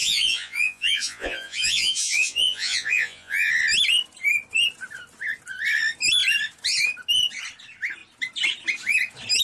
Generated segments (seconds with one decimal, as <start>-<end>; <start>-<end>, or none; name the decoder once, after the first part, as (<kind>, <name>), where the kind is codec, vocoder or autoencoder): 0.0-3.5 (vocoder, Vocos)